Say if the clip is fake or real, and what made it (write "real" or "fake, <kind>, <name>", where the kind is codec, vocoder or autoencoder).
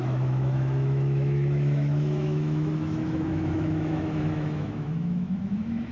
fake, autoencoder, DAC-VAE